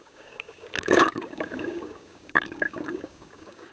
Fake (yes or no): yes